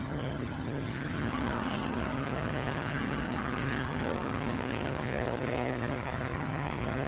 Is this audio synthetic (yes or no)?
yes